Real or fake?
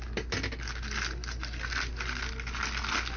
real